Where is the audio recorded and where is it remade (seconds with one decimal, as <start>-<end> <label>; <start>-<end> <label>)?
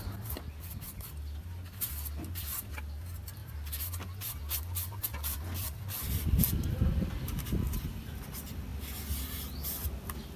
0.0-3.4 recorded; 3.4-6.1 remade; 6.1-10.4 recorded